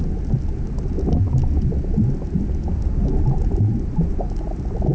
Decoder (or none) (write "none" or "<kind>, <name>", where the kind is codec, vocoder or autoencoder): none